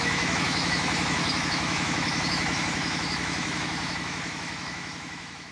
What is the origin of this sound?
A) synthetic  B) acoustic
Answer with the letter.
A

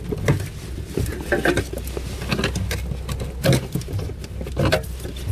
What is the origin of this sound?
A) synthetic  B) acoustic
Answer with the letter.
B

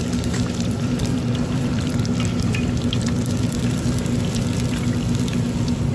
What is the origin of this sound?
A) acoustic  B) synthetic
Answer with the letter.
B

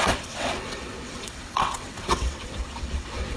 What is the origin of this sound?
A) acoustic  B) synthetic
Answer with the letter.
B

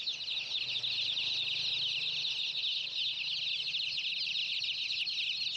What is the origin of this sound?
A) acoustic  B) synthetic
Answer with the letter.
A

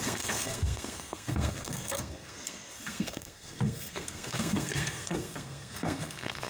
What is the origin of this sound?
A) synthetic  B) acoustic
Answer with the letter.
A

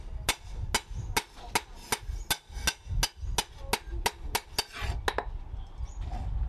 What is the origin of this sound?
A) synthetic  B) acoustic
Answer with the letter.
B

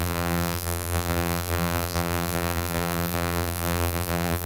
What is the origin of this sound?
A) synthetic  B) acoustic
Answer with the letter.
A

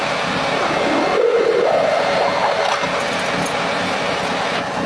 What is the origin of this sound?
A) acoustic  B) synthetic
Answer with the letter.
A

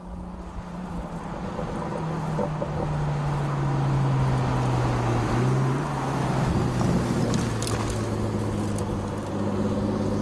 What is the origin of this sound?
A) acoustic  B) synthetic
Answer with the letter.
A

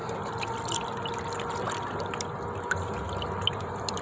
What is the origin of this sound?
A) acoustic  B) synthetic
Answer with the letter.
A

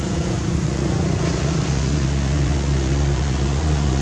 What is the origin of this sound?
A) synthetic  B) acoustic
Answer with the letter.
A